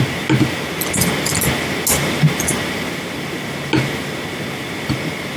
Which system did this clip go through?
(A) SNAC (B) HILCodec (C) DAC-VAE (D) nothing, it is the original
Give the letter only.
D